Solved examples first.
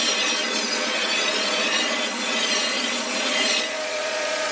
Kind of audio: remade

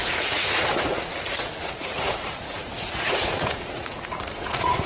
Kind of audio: remade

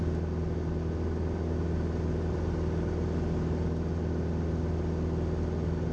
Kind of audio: recorded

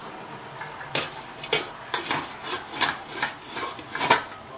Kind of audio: recorded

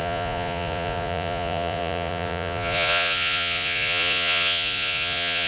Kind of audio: remade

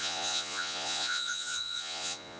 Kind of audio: remade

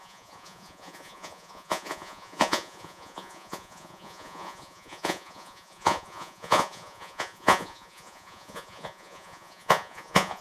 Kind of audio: remade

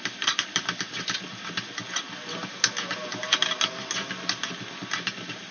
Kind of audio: recorded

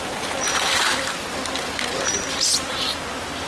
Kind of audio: recorded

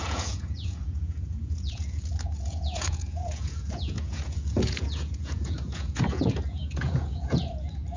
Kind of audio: remade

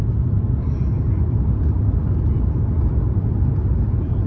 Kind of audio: recorded